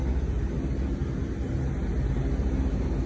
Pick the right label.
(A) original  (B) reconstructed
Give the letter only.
A